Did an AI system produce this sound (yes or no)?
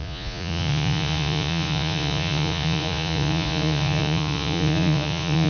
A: yes